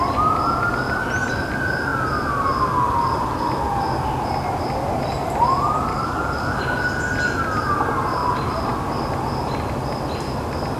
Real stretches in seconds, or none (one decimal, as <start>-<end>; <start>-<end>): 0.0-5.9; 6.6-10.8